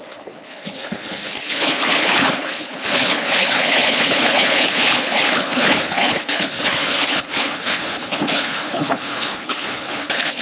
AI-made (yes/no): yes